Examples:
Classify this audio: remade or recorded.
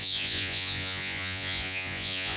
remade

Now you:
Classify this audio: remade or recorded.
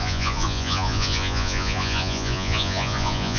remade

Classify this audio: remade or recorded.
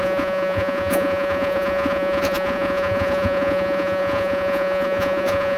remade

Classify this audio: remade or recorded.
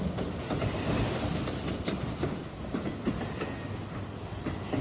recorded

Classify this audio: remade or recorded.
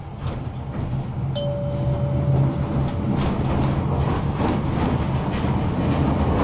recorded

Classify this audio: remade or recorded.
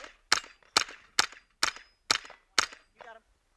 recorded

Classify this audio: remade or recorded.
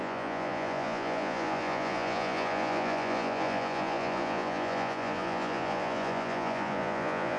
remade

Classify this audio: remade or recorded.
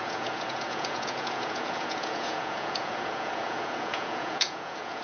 remade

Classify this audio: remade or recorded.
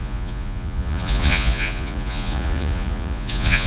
remade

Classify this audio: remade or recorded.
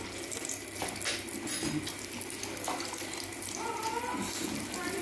recorded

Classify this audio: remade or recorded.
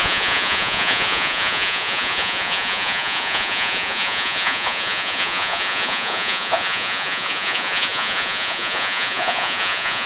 remade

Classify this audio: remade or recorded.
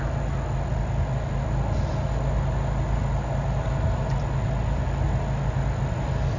recorded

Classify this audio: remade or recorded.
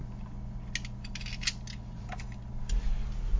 recorded